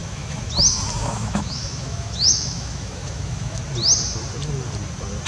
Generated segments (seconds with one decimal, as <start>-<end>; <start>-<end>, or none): 0.0-0.5; 1.0-3.6